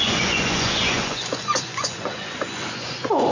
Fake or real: fake